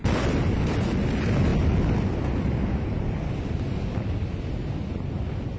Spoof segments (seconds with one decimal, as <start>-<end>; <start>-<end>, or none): none